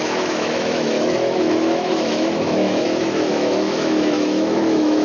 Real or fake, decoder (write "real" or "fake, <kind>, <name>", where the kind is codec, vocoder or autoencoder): fake, autoencoder, DAC-VAE